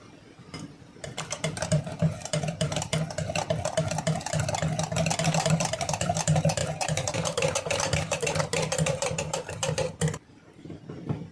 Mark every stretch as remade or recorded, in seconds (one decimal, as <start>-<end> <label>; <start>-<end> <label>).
0.0-2.9 remade; 2.9-5.4 recorded; 5.4-11.3 remade